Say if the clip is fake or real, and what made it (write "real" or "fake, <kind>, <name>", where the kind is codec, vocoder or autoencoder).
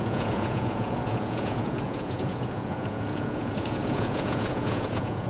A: fake, vocoder, Vocos